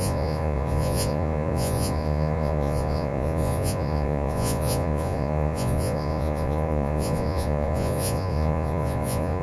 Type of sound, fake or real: fake